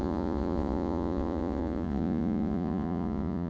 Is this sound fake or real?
fake